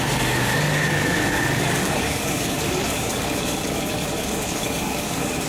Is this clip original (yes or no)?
no